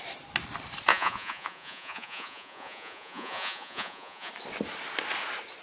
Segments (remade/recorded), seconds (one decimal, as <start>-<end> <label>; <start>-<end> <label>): 0.0-0.9 recorded; 0.9-4.3 remade; 4.3-5.6 recorded